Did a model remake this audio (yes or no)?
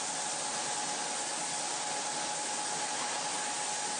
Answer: no